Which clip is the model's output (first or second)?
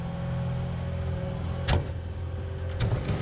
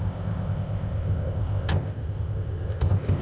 second